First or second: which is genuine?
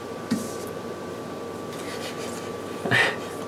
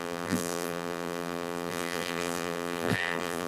first